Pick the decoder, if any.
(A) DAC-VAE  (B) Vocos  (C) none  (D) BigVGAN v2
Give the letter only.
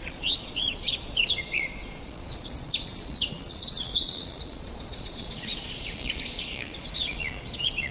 B